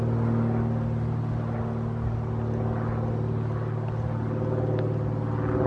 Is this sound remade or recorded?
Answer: recorded